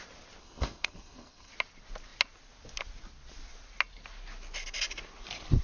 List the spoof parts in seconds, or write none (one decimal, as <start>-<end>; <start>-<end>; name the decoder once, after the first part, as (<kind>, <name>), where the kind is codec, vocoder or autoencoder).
0.4-1.5 (codec, SNAC)